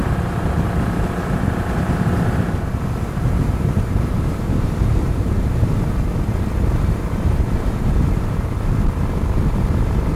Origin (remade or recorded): remade